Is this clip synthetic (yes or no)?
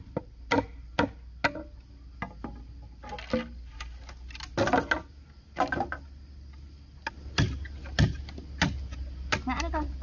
no